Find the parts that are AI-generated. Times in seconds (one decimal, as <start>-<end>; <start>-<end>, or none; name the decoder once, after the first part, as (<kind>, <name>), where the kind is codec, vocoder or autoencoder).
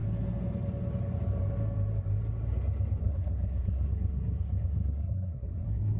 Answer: 3.0-6.0 (codec, SNAC)